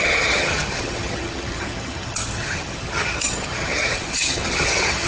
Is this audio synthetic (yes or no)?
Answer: yes